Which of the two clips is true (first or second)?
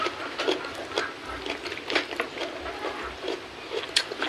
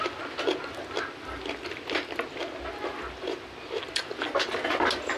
second